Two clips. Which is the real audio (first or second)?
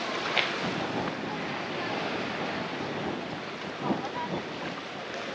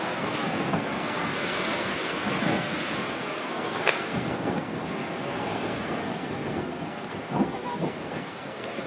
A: first